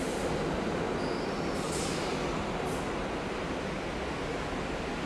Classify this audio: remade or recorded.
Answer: recorded